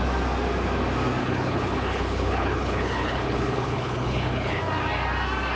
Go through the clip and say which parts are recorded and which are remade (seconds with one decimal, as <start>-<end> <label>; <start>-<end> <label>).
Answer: 0.0-1.2 recorded; 1.2-4.6 remade; 4.6-5.6 recorded